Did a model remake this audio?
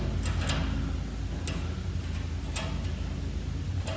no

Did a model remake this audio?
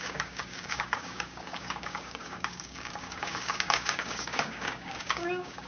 yes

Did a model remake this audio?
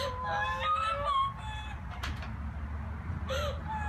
no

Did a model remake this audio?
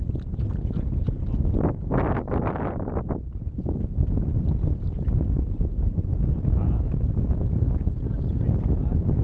no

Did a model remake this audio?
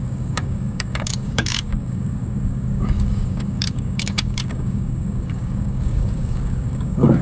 yes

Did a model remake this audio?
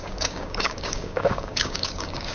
yes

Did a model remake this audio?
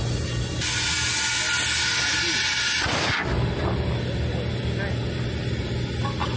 no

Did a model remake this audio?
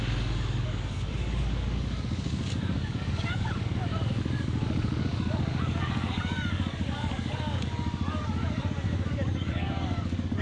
yes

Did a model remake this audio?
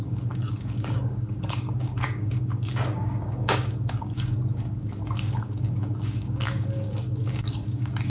yes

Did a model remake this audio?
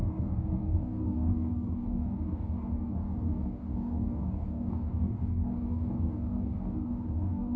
yes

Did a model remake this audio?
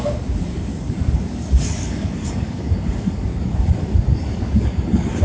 yes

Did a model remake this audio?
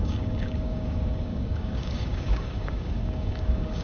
yes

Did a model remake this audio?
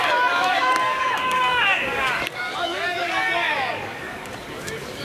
yes